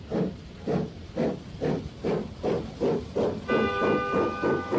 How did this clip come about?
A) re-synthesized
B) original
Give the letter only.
B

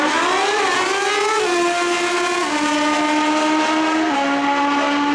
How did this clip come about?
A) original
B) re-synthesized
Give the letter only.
A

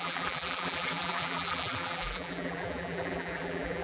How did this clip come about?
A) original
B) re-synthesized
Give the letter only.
B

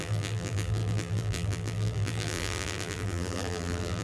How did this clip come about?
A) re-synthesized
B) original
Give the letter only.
A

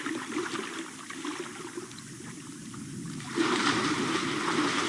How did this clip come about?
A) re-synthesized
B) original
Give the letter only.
B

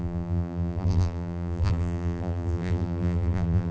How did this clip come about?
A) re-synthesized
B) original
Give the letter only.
A